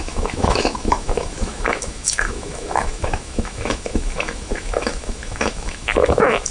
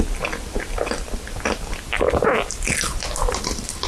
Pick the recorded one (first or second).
second